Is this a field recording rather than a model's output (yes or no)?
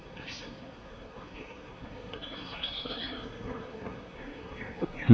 no